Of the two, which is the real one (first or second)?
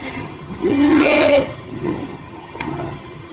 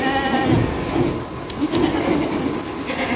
second